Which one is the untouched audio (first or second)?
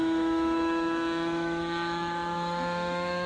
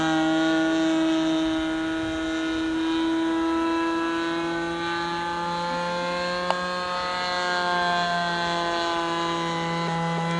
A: second